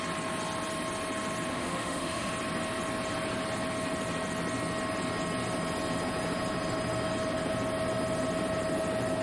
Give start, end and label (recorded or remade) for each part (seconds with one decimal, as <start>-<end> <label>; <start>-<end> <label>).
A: 0.0-1.5 recorded; 1.5-2.3 remade; 2.3-9.2 recorded